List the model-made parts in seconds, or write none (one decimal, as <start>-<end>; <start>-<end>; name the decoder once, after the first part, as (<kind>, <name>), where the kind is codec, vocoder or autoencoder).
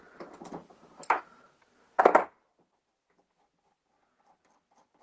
0.6-2.0 (vocoder, BigVGAN v2)